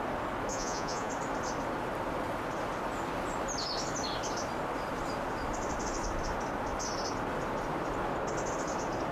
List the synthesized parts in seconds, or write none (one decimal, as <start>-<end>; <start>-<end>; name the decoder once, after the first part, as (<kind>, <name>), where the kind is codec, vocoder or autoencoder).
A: 0.5-1.1 (vocoder, Vocos)